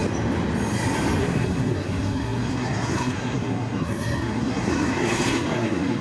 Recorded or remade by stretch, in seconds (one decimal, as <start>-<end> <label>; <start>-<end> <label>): 0.0-1.2 recorded; 1.2-6.0 remade